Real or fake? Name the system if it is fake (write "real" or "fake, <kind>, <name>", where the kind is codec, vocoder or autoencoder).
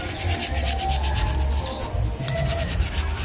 real